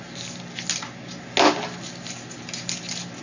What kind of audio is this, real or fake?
real